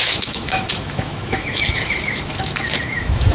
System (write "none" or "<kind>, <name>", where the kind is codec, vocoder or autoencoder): autoencoder, DAC-VAE